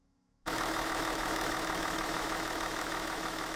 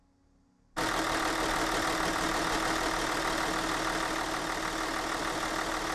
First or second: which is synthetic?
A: first